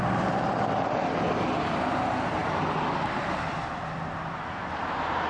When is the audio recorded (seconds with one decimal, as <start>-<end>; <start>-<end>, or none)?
0.0-5.3